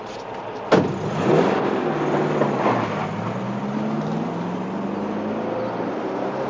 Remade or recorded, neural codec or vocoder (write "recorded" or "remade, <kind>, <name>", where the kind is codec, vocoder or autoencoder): recorded